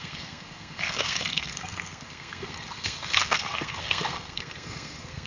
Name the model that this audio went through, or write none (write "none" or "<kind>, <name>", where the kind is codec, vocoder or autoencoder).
codec, SNAC